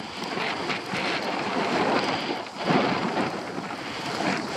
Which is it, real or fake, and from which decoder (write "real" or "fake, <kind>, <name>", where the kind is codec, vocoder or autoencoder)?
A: fake, vocoder, BigVGAN v2